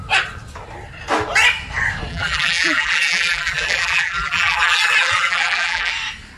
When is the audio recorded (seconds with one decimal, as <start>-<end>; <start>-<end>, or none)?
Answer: 0.0-2.1; 5.9-6.4